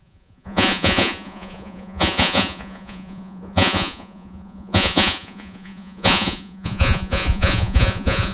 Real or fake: fake